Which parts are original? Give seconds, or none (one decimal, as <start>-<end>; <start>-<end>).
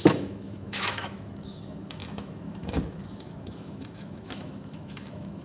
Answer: none